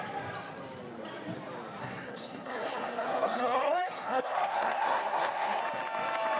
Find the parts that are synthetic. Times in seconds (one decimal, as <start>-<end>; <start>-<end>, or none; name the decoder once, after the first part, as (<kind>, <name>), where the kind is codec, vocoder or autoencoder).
1.8-5.6 (codec, SNAC)